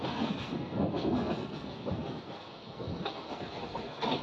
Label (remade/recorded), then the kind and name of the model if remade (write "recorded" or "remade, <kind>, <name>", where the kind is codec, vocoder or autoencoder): remade, codec, SNAC